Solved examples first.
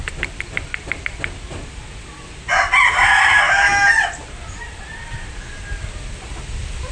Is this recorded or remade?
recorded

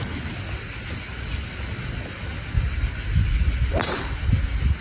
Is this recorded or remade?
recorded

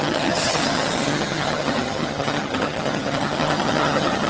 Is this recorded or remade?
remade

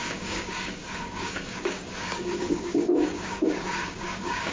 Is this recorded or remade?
remade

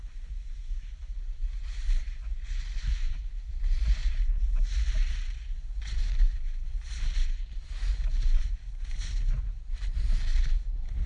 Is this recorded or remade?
remade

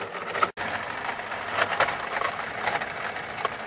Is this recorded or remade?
recorded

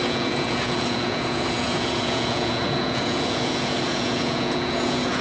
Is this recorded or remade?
remade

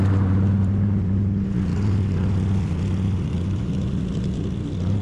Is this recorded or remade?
recorded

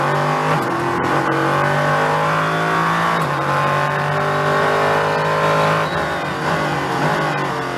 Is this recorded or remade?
recorded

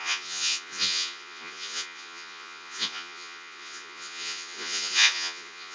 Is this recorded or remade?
remade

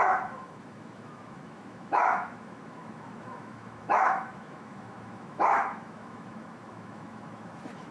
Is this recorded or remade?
remade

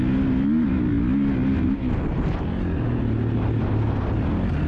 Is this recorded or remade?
recorded